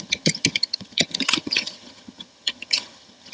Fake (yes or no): yes